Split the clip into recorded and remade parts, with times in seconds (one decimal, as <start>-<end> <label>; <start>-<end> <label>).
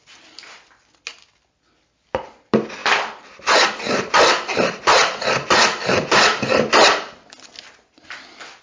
0.0-2.8 recorded; 2.8-6.7 remade; 6.7-8.6 recorded